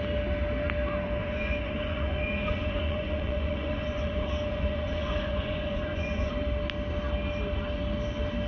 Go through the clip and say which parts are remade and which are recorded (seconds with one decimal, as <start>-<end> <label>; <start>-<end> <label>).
0.0-1.2 recorded; 1.2-6.3 remade; 6.3-8.5 recorded